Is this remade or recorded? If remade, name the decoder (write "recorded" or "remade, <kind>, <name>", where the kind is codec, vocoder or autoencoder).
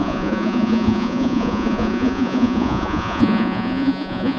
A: remade, vocoder, Vocos